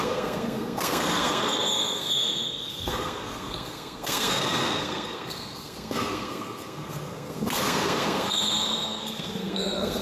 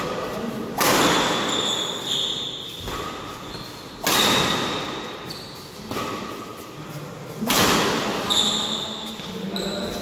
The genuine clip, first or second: second